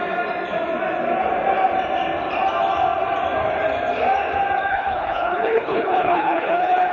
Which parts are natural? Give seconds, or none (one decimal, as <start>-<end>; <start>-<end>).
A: 0.0-4.7